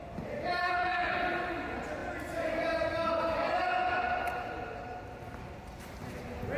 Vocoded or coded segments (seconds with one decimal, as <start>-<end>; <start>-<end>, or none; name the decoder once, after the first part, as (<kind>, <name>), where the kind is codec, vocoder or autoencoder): 0.6-1.1 (codec, SNAC)